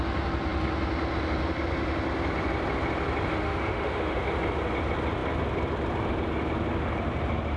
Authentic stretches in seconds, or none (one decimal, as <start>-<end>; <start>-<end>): 0.0-3.3; 4.2-7.6